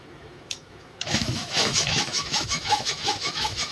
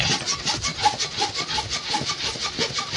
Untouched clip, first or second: second